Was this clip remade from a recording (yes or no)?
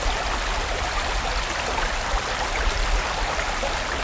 no